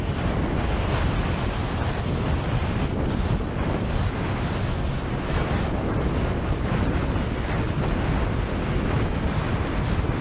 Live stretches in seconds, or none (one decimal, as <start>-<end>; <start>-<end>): 0.0-10.2